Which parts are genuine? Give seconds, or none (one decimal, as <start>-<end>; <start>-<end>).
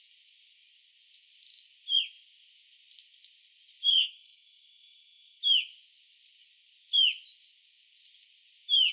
0.0-3.9; 5.4-8.9